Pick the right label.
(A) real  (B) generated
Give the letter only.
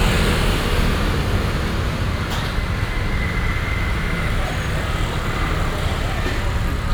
A